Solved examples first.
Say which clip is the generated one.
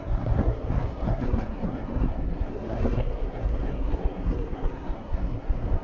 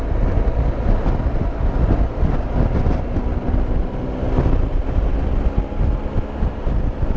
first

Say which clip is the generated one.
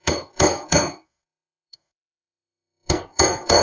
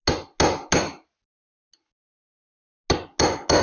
first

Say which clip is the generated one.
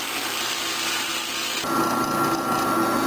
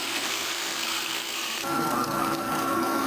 second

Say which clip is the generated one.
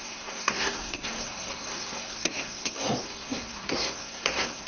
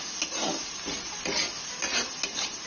first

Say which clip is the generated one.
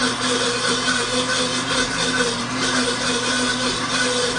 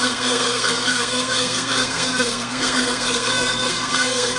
second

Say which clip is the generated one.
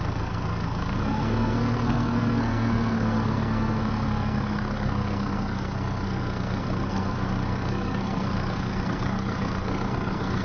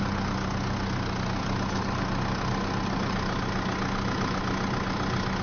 first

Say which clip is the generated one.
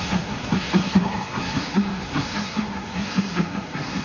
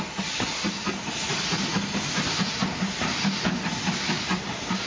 first